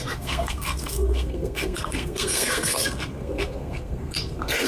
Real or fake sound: fake